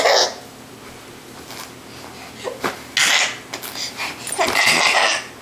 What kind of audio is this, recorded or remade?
recorded